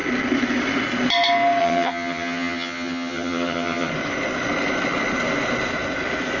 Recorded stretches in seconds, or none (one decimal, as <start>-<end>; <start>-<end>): 0.0-1.6; 3.9-6.4